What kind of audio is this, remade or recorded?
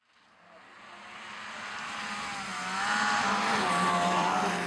recorded